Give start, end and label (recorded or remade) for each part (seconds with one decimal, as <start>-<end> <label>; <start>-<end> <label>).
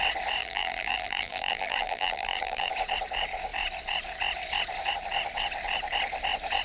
0.0-0.4 recorded; 0.4-2.7 remade; 2.7-6.6 recorded